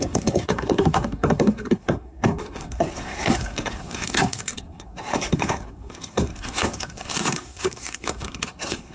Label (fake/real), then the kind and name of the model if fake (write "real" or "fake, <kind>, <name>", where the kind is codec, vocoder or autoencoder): fake, codec, SNAC